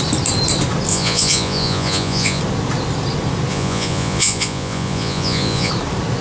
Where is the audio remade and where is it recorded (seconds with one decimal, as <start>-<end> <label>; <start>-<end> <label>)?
0.0-0.9 recorded; 0.9-2.4 remade; 2.4-3.5 recorded; 3.5-5.7 remade; 5.7-6.2 recorded